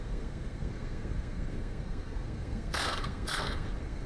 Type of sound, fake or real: fake